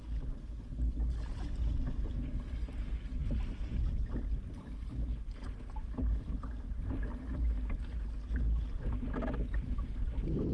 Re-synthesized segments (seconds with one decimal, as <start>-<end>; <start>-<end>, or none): none